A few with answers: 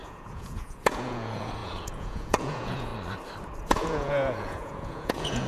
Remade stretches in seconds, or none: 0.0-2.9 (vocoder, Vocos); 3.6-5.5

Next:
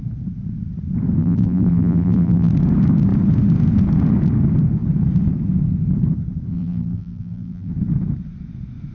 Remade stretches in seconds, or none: 1.2-2.5 (vocoder, BigVGAN v2); 6.5-7.7

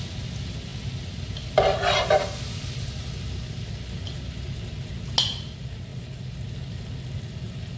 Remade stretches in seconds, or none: none

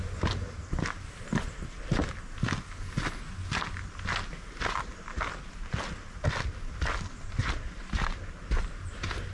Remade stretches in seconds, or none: 7.4-8.0 (vocoder, BigVGAN v2)